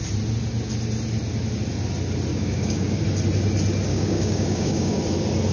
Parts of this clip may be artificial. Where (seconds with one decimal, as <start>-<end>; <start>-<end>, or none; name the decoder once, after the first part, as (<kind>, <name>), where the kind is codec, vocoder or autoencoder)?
2.3-3.0 (codec, DAC); 3.9-5.0